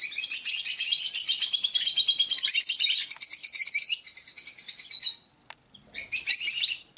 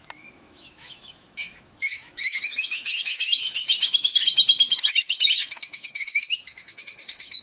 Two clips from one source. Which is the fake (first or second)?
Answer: second